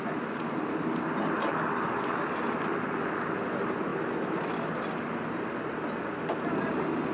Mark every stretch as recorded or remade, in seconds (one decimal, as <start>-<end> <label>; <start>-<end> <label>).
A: 0.0-7.1 recorded